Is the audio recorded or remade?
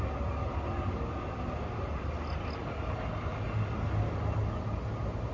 recorded